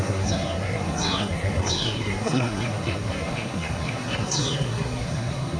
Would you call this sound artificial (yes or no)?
yes